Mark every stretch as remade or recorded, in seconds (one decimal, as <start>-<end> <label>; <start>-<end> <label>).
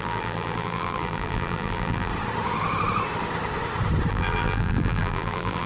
0.0-2.1 remade; 2.1-4.1 recorded; 4.1-5.7 remade